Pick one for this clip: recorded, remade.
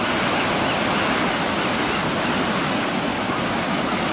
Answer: recorded